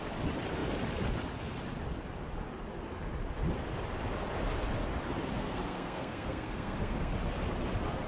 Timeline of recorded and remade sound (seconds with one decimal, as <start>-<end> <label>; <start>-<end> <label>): 0.0-5.4 recorded; 5.4-7.1 remade; 7.1-8.1 recorded